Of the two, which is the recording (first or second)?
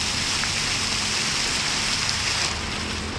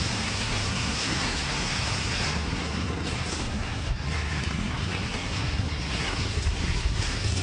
first